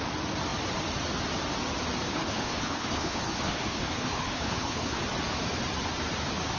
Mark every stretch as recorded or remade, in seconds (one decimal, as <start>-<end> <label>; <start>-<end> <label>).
0.0-2.1 recorded; 2.1-5.0 remade; 5.0-6.6 recorded